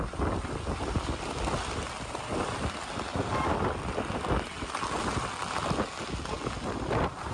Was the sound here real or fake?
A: real